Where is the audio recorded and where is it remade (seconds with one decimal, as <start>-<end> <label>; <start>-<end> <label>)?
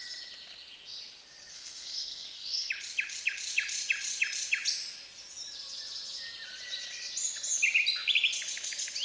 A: 0.0-1.5 recorded; 1.5-2.7 remade; 2.7-9.0 recorded